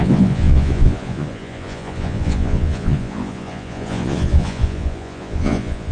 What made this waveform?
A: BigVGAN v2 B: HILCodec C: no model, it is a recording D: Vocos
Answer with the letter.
D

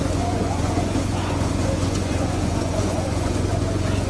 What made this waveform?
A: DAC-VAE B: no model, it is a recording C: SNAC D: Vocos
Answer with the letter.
D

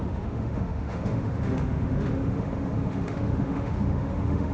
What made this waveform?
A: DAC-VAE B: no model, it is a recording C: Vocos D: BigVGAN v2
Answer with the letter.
A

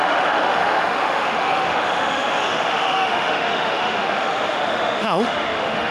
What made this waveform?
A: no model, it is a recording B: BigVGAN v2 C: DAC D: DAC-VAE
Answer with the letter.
D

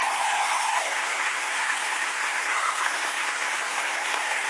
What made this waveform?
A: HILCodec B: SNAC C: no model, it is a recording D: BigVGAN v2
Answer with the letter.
B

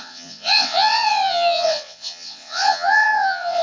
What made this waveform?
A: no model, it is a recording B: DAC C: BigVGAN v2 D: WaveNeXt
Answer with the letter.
D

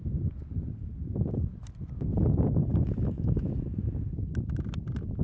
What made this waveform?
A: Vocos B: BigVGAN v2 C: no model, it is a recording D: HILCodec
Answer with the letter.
C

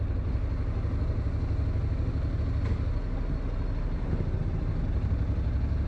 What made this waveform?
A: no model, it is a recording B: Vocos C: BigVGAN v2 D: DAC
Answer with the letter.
A